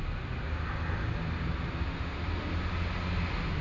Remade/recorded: recorded